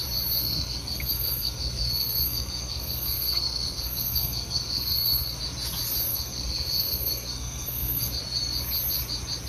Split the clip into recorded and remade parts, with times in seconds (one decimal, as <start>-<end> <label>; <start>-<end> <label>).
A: 0.0-0.4 recorded; 0.4-5.4 remade; 5.4-6.1 recorded; 6.1-8.1 remade; 8.1-9.5 recorded